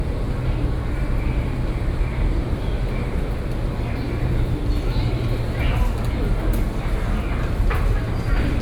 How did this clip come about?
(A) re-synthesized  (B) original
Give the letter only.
B